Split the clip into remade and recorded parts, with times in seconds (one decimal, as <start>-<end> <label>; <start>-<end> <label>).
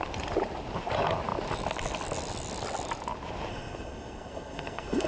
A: 0.0-3.5 recorded; 3.5-5.1 remade